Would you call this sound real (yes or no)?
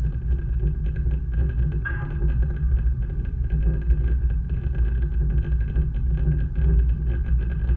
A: yes